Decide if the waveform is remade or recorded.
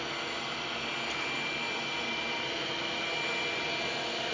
recorded